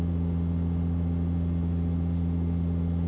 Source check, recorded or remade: recorded